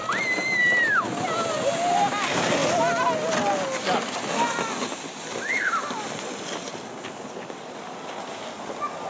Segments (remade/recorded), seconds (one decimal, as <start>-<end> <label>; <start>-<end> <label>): 0.0-9.1 recorded